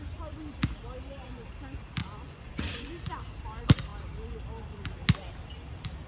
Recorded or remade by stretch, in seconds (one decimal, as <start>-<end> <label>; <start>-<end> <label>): 0.0-2.0 recorded; 2.0-2.9 remade; 2.9-6.1 recorded